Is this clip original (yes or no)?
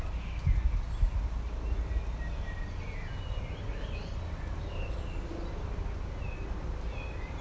yes